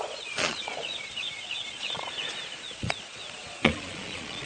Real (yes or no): no